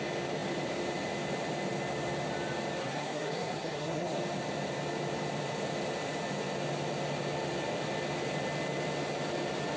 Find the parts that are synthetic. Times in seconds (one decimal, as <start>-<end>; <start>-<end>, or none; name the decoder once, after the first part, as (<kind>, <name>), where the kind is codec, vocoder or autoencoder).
2.8-4.2 (codec, SNAC)